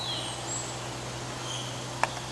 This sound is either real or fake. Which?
real